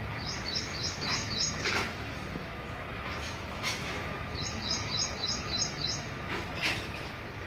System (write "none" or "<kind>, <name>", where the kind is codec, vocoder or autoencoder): autoencoder, DAC-VAE